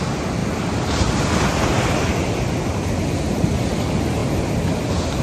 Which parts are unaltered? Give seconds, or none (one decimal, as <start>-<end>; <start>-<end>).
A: 0.0-5.2